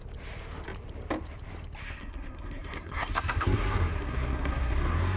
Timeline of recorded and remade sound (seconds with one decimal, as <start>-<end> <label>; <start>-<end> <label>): 0.0-1.8 recorded; 1.8-5.2 remade